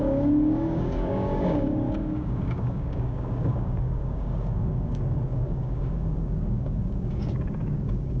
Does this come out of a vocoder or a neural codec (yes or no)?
yes